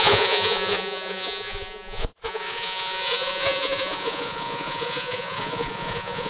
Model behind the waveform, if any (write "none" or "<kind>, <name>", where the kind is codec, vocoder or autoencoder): vocoder, Vocos